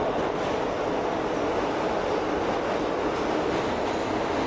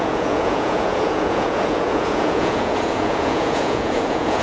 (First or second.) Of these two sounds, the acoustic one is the first